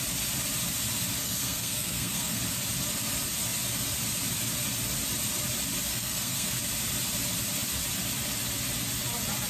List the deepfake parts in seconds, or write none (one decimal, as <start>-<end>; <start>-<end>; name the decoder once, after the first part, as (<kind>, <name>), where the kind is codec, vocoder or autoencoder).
1.2-2.4 (codec, SNAC); 5.9-6.5